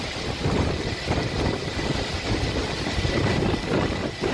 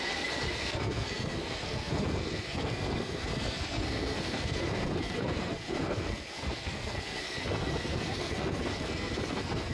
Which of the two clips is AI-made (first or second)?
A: second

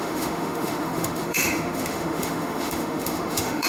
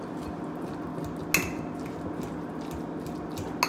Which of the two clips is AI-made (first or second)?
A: first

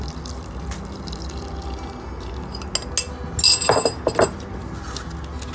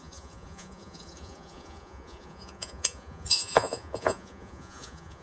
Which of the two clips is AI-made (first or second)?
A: second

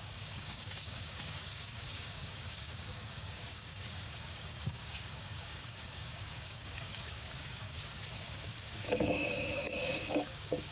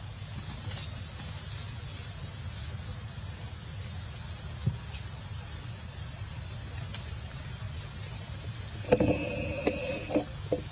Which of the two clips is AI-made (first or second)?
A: first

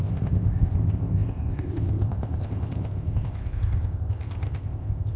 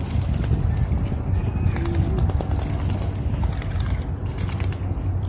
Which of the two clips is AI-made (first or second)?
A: first